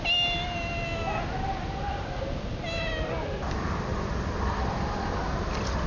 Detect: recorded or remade recorded